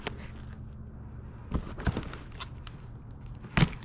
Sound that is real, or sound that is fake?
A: real